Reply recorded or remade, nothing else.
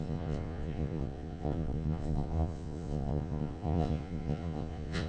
remade